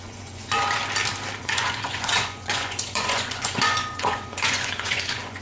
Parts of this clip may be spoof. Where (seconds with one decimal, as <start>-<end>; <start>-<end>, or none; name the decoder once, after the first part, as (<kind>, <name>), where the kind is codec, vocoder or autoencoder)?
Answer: 0.0-0.8 (vocoder, Vocos); 1.4-5.4